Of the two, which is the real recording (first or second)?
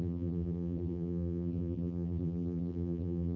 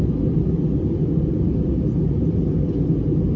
second